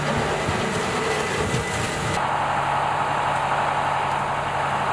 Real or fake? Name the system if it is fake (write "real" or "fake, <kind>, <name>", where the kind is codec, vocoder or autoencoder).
real